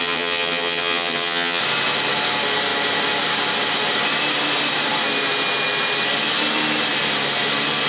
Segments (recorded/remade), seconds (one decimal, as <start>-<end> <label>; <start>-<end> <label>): 0.0-1.6 remade; 1.6-7.9 recorded

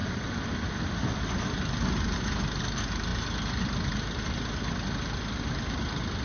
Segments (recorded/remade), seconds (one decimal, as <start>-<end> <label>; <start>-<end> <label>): 0.0-6.2 recorded

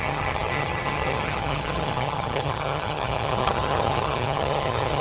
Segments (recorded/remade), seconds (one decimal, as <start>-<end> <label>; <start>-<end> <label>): 0.0-5.0 remade